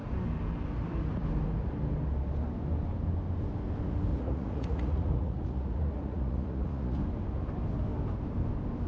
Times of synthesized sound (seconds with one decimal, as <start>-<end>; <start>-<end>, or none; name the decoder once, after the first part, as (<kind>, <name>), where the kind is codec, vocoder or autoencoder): 4.1-7.0 (vocoder, Vocos)